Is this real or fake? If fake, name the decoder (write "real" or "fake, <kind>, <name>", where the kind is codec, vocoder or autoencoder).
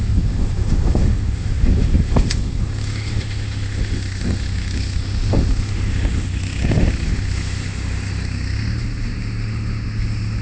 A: fake, autoencoder, DAC-VAE